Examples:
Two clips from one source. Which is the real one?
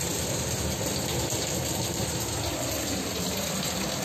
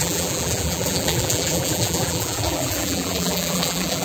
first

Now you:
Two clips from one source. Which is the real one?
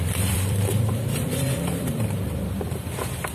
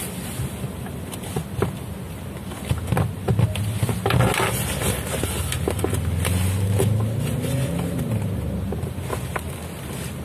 second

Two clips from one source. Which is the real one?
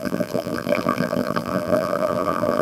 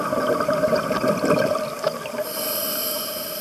second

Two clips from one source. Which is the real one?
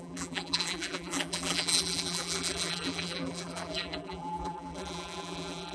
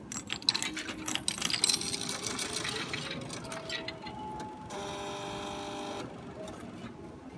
second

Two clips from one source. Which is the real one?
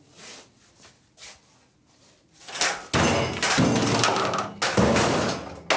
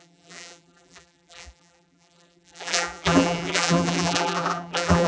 first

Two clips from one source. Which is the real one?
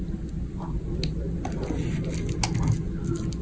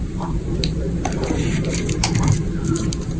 first